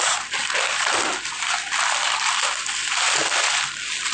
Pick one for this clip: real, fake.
real